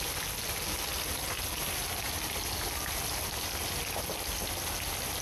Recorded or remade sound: recorded